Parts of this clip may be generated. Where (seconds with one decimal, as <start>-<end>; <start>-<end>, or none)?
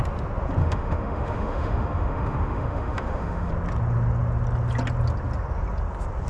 0.6-3.5